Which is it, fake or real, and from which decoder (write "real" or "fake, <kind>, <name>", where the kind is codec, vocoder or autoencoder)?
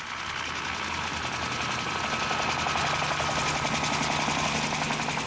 real